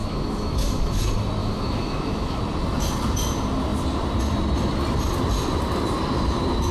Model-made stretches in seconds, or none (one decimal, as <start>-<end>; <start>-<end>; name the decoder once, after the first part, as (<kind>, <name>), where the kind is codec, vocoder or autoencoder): 0.0-1.0 (autoencoder, DAC-VAE); 1.4-2.4